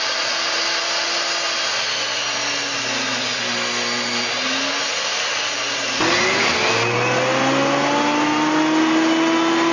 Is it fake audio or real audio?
real